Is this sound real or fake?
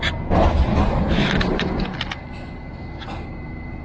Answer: real